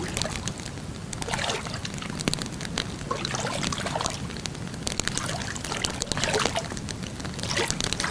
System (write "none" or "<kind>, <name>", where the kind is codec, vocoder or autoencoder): none